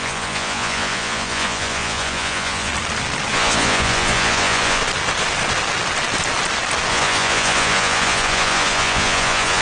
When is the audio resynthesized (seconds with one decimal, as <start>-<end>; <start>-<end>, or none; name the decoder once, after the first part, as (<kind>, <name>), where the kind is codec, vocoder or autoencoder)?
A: 0.0-2.7 (vocoder, Vocos); 3.3-4.8; 6.9-9.6